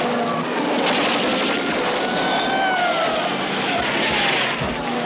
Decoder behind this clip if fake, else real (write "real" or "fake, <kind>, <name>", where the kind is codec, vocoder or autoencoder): real